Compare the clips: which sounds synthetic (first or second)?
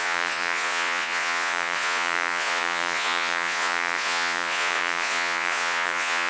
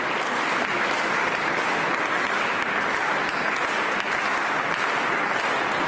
first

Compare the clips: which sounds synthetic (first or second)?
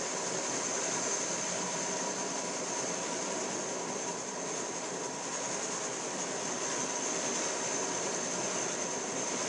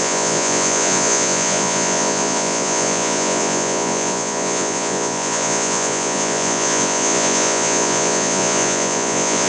second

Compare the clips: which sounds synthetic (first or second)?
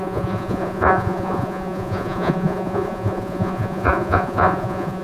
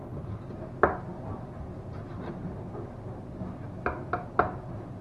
first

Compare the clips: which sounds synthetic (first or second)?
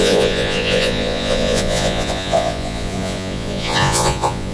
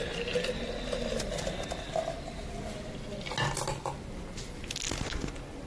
first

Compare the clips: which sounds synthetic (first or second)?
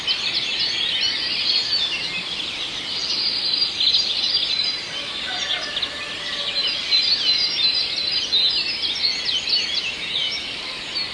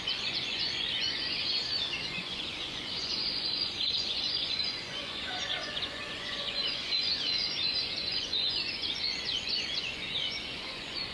second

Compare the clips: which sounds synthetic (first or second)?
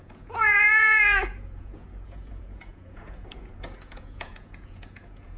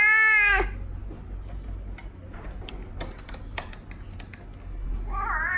first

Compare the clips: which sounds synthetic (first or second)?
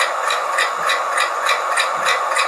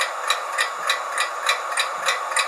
first